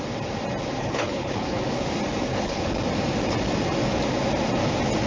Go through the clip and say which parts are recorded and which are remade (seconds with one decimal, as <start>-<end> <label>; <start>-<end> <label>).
0.0-0.8 recorded; 0.8-1.7 remade; 1.7-2.3 recorded; 2.3-2.8 remade; 2.8-5.1 recorded